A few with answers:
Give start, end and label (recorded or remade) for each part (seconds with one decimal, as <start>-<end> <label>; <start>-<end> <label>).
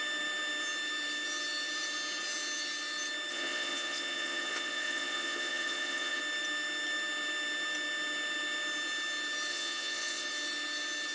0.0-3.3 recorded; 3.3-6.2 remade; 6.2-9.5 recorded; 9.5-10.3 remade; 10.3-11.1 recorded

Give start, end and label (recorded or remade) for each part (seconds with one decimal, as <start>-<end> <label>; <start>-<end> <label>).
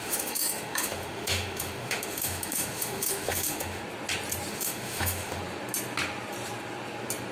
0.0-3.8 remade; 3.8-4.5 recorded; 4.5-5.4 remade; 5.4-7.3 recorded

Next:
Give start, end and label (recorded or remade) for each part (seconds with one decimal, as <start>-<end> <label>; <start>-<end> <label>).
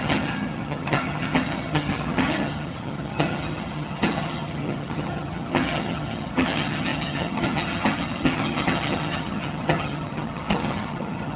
0.0-11.4 remade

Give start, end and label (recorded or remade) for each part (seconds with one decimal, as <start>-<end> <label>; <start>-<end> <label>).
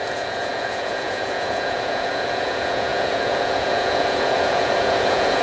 0.0-5.4 remade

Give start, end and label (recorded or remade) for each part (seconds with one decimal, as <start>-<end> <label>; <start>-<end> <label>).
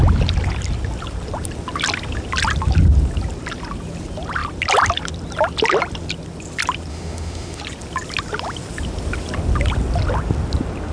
0.0-6.9 recorded; 6.9-7.6 remade; 7.6-10.9 recorded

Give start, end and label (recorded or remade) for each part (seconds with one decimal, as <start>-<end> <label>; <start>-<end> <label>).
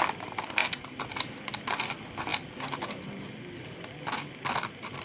0.0-5.0 recorded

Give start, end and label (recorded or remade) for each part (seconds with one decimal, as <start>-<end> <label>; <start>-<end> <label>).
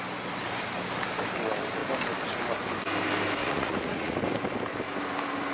0.0-3.4 recorded; 3.4-4.2 remade; 4.2-5.5 recorded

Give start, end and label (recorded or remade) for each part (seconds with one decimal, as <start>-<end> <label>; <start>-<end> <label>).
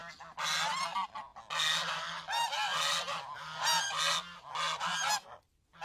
0.0-5.8 recorded